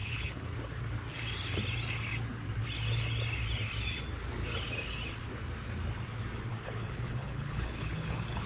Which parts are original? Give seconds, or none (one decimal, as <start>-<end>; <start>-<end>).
0.5-6.5